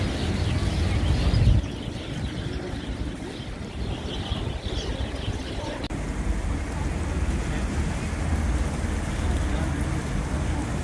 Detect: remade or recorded recorded